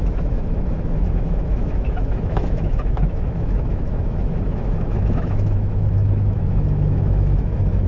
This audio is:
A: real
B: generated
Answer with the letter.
B